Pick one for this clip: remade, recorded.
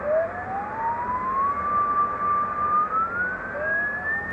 recorded